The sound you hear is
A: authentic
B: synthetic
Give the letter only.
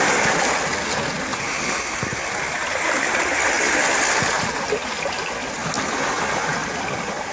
A